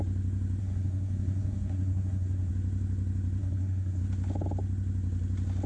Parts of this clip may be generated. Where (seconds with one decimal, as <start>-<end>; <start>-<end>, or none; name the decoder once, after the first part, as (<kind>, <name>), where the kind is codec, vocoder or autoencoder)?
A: 0.6-2.5 (codec, SNAC); 3.4-4.0